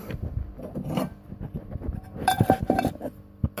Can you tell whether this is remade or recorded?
remade